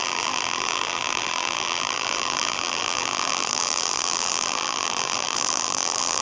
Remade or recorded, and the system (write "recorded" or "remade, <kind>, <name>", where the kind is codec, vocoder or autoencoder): remade, vocoder, BigVGAN v2